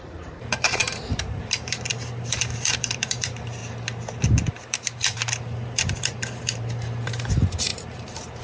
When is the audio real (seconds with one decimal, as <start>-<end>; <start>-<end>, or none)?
3.6-4.5